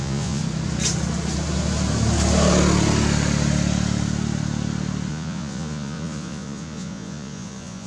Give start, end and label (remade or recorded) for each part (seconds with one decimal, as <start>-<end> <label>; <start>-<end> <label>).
0.0-0.4 remade; 0.4-5.1 recorded; 5.1-7.9 remade